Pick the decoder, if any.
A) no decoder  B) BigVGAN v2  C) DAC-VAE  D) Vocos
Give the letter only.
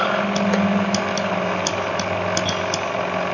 A